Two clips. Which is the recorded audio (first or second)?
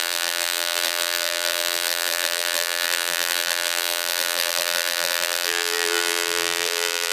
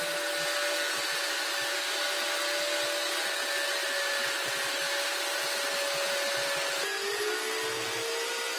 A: second